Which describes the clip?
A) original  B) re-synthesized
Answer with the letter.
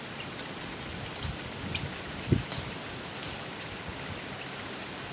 A